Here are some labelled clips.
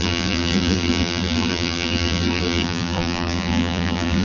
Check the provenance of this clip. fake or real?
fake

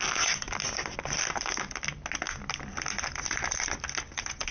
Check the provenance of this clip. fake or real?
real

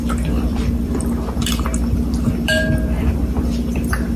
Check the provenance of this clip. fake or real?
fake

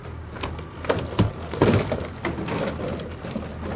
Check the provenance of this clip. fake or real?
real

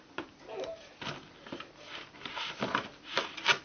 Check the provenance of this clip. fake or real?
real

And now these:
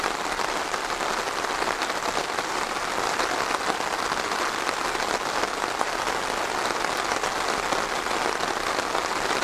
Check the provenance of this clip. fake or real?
real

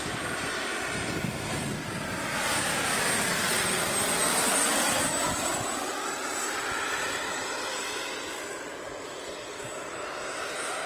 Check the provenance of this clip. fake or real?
real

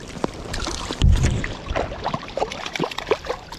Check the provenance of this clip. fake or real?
fake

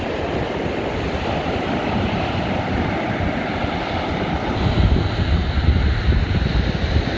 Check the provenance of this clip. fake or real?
fake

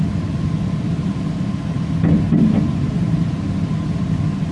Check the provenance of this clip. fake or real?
real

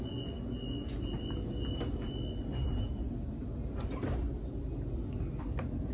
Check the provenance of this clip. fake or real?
real